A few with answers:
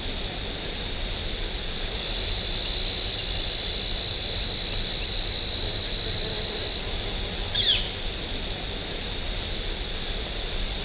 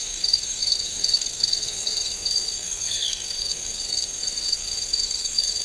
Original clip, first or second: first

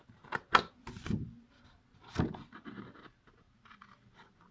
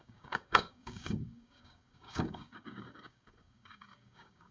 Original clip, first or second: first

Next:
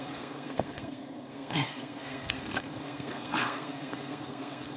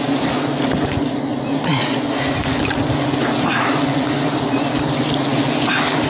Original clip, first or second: second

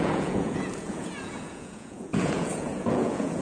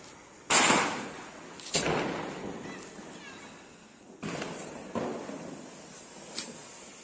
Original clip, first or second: second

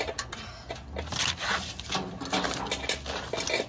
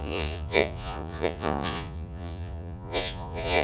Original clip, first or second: first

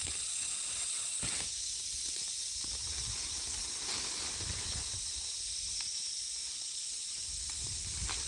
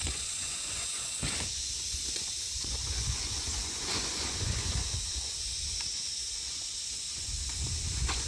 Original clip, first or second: first